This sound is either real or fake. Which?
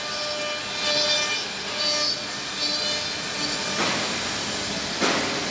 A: real